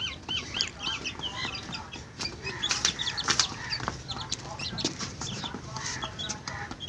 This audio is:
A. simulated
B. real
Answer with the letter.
A